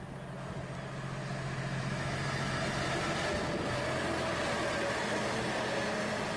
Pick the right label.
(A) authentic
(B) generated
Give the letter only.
A